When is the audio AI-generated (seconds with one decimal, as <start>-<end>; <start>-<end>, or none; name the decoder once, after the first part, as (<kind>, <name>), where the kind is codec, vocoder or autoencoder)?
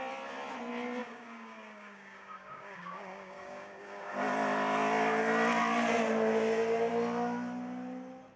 1.0-4.1 (codec, DAC)